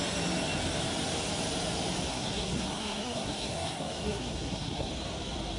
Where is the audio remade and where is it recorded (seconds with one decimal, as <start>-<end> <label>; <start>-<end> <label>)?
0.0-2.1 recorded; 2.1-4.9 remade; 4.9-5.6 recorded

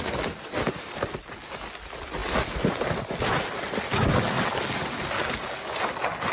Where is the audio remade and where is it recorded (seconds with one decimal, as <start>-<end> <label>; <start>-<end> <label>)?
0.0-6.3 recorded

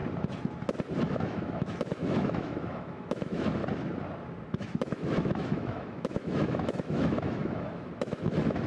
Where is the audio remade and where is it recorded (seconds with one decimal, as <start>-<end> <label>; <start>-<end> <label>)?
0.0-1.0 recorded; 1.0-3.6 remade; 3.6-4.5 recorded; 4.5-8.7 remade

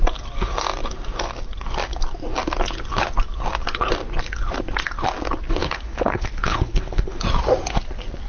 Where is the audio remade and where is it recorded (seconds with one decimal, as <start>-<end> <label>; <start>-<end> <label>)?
0.0-5.6 recorded; 5.6-7.2 remade; 7.2-8.3 recorded

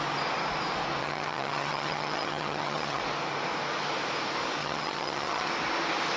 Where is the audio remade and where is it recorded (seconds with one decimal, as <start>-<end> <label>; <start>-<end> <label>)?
0.0-1.0 recorded; 1.0-3.0 remade; 3.0-4.6 recorded; 4.6-5.5 remade; 5.5-6.2 recorded

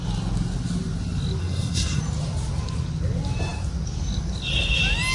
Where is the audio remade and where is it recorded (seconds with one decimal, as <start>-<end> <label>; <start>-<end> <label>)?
0.0-1.4 recorded; 1.4-2.0 remade; 2.0-5.1 recorded